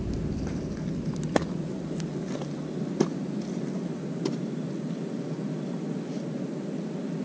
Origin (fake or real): real